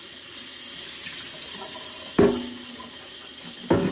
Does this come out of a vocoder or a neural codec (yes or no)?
no